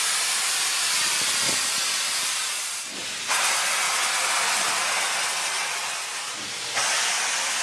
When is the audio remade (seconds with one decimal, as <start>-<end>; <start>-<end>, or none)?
none

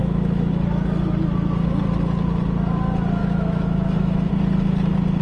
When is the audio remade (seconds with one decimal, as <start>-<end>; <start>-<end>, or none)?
0.0-0.5; 3.2-4.3

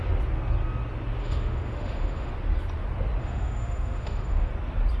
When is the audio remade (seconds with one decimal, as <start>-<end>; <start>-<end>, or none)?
1.2-2.3; 3.2-4.5

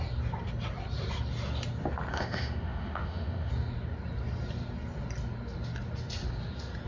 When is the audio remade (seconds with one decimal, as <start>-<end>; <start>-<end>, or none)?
2.1-3.5